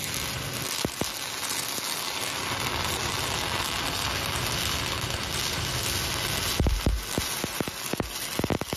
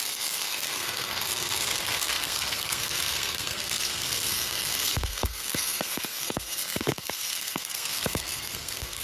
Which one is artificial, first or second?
second